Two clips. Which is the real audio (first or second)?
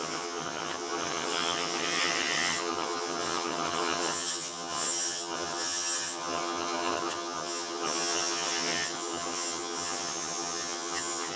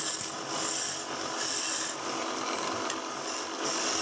second